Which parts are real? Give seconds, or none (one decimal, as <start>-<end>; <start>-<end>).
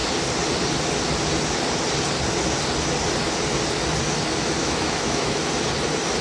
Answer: 0.0-4.6; 5.4-6.2